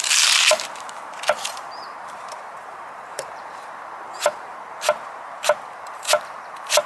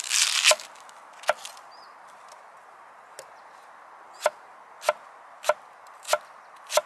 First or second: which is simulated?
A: first